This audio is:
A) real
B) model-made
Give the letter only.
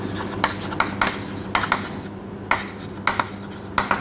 A